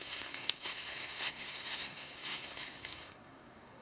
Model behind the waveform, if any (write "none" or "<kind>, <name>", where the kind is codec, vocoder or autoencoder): codec, SNAC